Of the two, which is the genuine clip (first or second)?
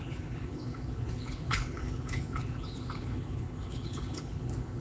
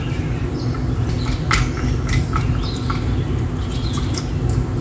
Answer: second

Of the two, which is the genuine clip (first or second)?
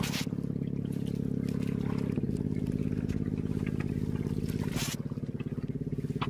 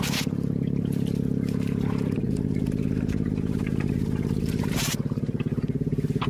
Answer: first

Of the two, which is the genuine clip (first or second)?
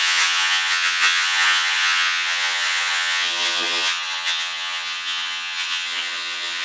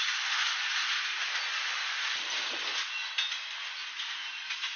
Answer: second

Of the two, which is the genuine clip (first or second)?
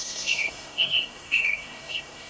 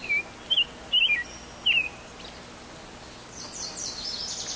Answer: second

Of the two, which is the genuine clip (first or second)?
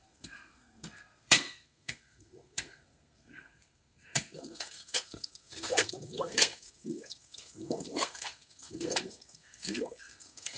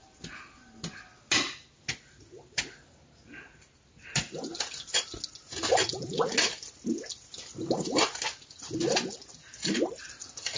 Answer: second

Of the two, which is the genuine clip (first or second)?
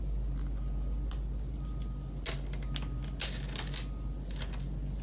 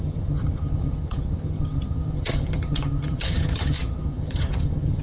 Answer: first